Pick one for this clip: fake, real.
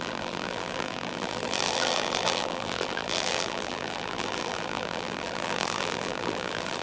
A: fake